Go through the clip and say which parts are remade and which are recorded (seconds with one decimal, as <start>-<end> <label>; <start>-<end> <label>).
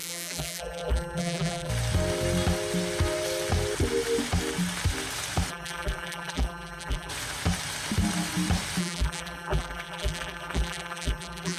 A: 0.0-1.7 remade; 1.7-5.5 recorded; 5.5-7.1 remade; 7.1-8.8 recorded; 8.8-11.6 remade